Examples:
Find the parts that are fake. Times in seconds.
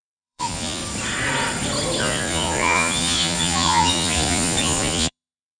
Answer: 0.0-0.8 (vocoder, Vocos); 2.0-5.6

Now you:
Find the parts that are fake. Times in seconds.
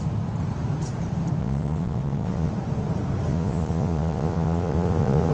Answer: 1.4-2.5 (vocoder, Vocos); 3.3-5.3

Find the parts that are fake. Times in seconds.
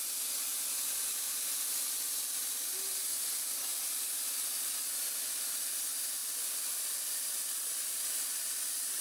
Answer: none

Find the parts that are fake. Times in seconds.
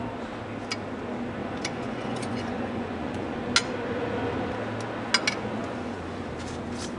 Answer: 1.4-3.4 (vocoder, Vocos); 5.6-6.3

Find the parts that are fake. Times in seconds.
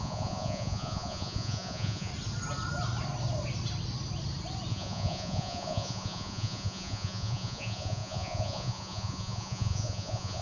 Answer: 0.0-2.1 (vocoder, Vocos); 4.7-10.4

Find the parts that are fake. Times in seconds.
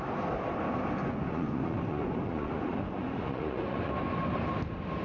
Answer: 1.0-3.9 (vocoder, Vocos)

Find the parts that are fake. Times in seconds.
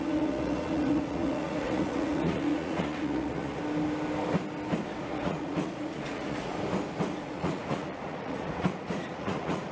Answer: 0.0-3.6 (vocoder, Vocos); 5.0-6.5; 7.2-9.7